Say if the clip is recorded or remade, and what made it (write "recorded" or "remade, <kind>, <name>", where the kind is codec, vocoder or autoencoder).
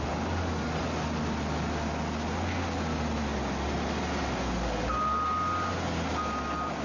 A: recorded